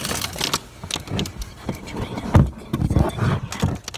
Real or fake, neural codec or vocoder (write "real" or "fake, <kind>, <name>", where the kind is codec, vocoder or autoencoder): real